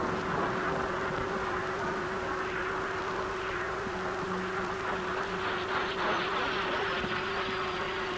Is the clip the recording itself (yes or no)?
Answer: yes